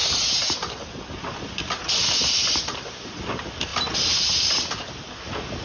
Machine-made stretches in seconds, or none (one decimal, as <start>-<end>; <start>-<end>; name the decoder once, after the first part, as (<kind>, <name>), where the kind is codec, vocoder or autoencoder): none